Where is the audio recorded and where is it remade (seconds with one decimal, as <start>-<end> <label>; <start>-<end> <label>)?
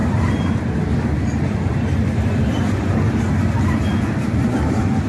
0.0-5.1 recorded